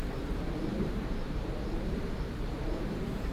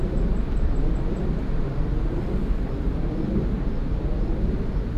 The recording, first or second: second